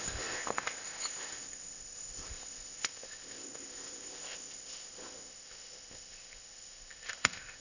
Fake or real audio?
fake